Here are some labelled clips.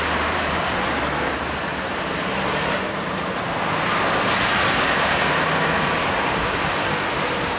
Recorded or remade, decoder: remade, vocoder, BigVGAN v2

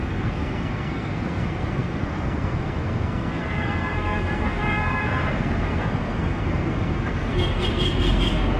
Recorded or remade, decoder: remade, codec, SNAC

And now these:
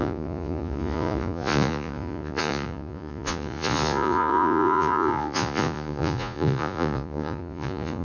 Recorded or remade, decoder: remade, vocoder, Vocos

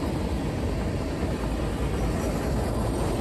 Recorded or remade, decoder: recorded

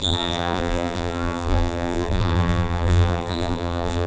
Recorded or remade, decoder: remade, vocoder, BigVGAN v2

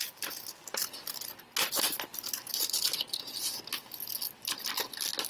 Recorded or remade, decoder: recorded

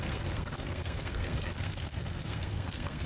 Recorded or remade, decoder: remade, codec, SNAC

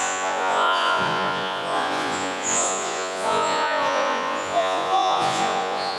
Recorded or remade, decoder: remade, vocoder, Vocos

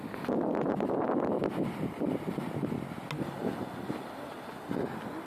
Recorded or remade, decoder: recorded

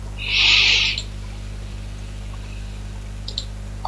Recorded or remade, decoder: recorded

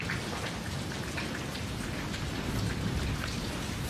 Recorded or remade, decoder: recorded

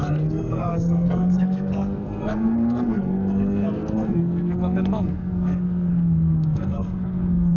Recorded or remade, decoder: remade, codec, SNAC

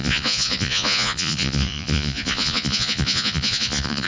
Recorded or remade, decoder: remade, vocoder, Vocos